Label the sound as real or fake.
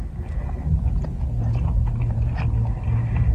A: real